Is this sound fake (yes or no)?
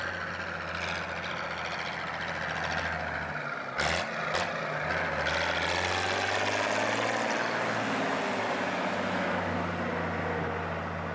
no